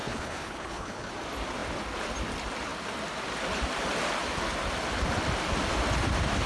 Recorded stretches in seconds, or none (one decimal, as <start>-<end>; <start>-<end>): 1.1-6.5